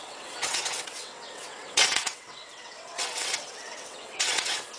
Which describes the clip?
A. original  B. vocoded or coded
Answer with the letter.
B